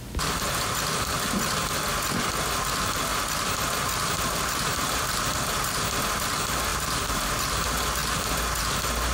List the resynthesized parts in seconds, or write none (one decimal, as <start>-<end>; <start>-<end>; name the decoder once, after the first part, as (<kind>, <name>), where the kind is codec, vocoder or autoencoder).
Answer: 6.7-7.5 (vocoder, BigVGAN v2)